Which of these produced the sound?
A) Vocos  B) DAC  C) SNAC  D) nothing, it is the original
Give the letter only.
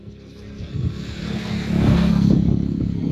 C